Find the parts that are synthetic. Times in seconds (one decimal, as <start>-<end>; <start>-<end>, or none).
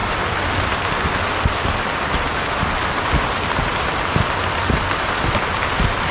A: none